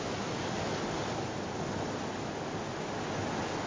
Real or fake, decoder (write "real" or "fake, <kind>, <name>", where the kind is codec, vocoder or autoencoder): real